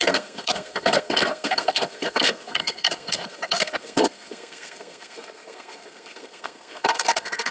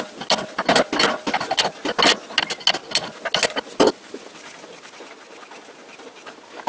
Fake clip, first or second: first